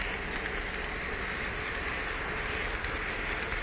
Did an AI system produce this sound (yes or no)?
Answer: no